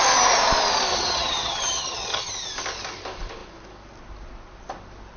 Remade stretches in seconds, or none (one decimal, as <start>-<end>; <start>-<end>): 0.9-2.3